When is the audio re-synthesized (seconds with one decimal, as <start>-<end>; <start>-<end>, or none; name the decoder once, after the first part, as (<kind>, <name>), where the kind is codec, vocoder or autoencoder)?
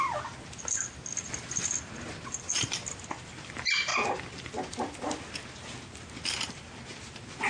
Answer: none